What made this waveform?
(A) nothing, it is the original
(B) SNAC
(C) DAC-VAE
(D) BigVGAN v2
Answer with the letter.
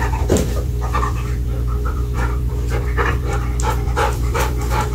D